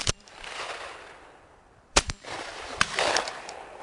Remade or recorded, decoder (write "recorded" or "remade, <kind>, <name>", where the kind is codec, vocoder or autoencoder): remade, vocoder, BigVGAN v2